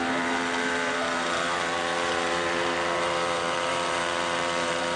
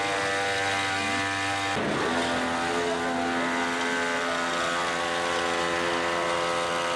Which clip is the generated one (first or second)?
first